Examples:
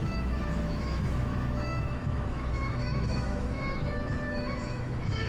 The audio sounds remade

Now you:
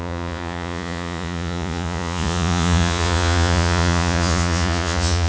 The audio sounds remade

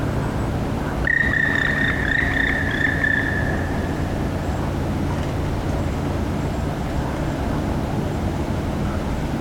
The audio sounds recorded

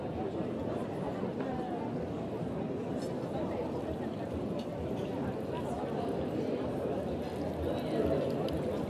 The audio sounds recorded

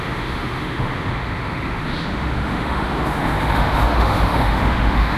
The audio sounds remade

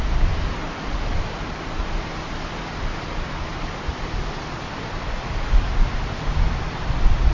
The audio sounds recorded